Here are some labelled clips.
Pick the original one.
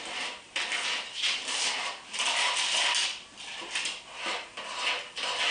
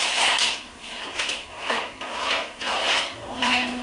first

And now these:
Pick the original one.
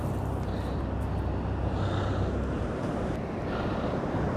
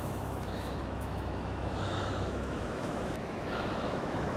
first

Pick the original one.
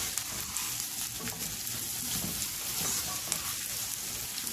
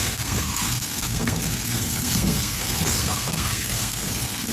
first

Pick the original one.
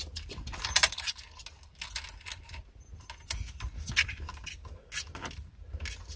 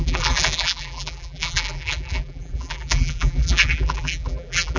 first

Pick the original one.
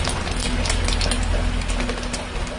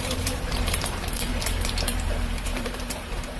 first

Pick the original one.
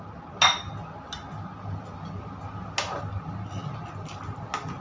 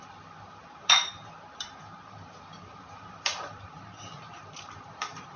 first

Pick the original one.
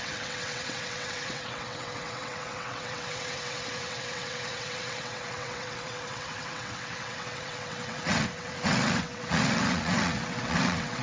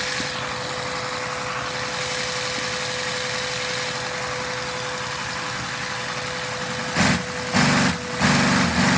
second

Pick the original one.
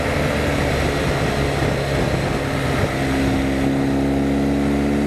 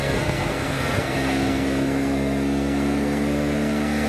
first